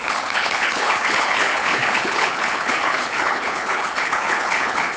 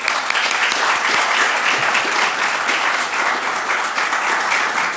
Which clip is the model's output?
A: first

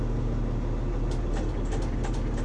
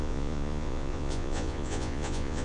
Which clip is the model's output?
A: second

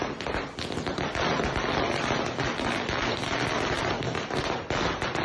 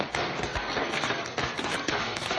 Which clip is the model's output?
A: second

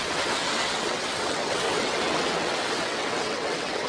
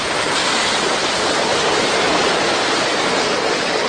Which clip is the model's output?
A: first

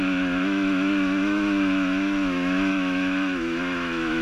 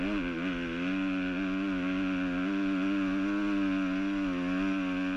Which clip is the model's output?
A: first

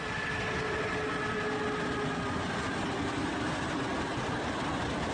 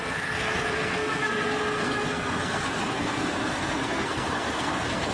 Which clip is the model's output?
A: second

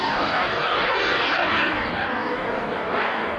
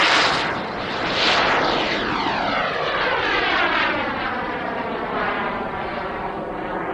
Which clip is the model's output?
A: first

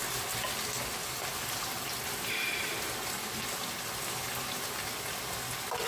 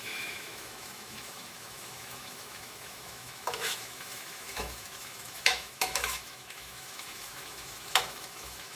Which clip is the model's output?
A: second